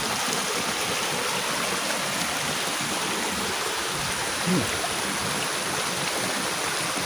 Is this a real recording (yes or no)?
yes